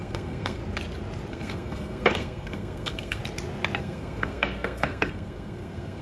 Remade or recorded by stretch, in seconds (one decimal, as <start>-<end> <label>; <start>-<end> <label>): 0.0-0.6 remade; 0.6-1.3 recorded; 1.3-3.2 remade; 3.2-3.8 recorded; 3.8-6.0 remade